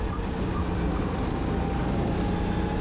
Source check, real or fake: real